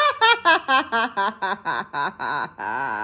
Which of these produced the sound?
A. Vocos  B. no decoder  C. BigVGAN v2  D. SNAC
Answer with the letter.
B